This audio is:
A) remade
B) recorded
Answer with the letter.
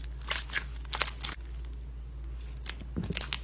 B